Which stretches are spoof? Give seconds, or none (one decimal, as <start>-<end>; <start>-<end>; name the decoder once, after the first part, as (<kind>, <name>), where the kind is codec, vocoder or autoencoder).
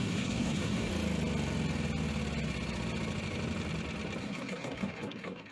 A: 0.0-0.9 (codec, SNAC); 4.2-5.5